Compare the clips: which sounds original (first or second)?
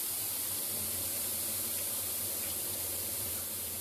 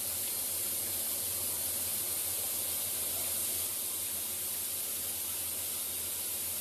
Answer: second